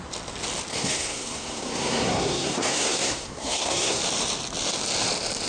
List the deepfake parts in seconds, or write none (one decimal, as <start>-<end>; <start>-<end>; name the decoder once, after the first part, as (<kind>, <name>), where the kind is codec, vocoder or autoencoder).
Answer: 0.7-4.0 (codec, SNAC)